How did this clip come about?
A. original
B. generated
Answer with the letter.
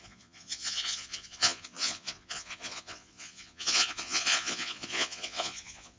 B